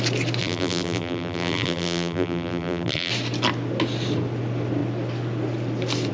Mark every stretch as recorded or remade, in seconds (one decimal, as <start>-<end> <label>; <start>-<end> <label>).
0.0-0.4 recorded; 0.4-3.1 remade; 3.1-6.1 recorded